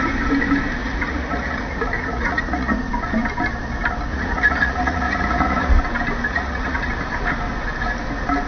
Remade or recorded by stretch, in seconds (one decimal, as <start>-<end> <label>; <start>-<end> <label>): 0.0-0.8 recorded; 0.8-2.9 remade; 2.9-4.1 recorded; 4.1-5.8 remade; 5.8-6.3 recorded; 6.3-6.9 remade; 6.9-8.5 recorded